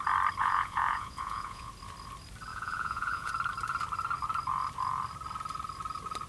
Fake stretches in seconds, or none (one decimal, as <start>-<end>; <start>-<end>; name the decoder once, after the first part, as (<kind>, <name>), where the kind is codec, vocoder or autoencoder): 0.4-1.7 (vocoder, Vocos); 2.5-3.3